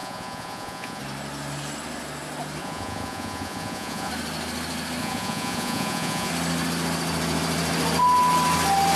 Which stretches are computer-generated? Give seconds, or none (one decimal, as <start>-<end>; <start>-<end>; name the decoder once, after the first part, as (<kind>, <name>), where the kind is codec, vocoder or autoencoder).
0.0-1.0 (vocoder, Vocos); 2.6-4.1; 5.0-6.3